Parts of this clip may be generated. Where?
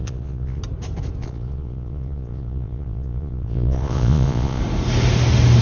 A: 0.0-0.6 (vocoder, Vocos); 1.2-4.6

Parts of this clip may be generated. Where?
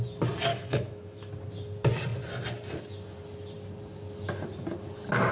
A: 0.5-1.3 (autoencoder, DAC-VAE)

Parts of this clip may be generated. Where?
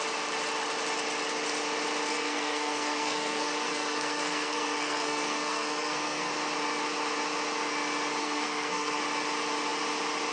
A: 2.1-6.3 (codec, SNAC); 8.2-9.0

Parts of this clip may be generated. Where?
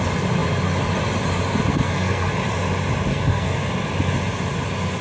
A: 1.7-2.3 (codec, SNAC); 3.1-3.7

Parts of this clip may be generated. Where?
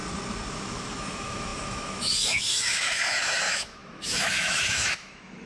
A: 0.5-5.5 (autoencoder, DAC-VAE)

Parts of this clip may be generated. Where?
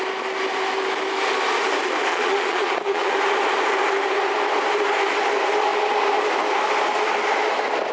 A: 2.1-3.1 (vocoder, Vocos)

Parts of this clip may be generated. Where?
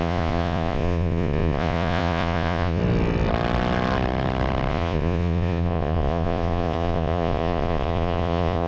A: 0.0-2.8 (vocoder, Vocos); 4.7-8.7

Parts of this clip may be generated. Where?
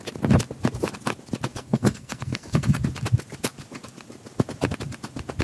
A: 1.5-2.8 (codec, SNAC)